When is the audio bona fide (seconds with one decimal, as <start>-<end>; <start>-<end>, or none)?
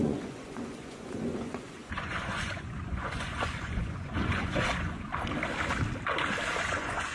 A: 5.1-6.6